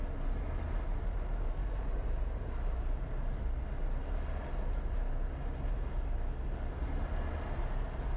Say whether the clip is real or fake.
real